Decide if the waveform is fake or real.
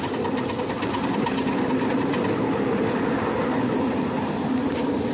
real